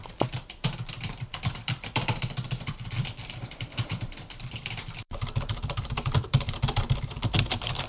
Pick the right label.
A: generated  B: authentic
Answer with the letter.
A